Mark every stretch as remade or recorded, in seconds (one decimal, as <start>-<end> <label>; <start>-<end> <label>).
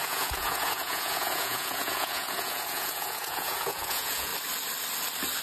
0.0-4.3 remade; 4.3-5.4 recorded